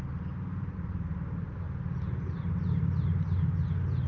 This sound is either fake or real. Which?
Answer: real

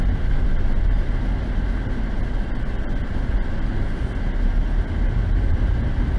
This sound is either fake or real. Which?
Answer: real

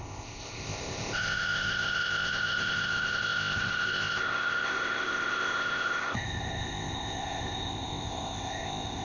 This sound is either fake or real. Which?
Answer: fake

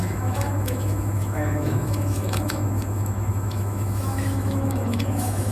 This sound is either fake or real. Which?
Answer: fake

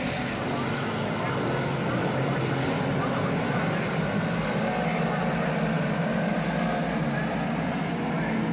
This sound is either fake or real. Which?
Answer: real